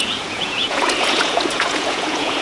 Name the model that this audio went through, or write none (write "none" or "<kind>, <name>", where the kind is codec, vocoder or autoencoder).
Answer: vocoder, Vocos